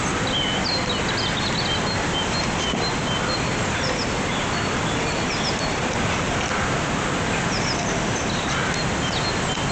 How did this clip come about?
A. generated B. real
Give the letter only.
B